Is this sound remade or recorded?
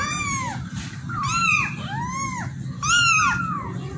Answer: recorded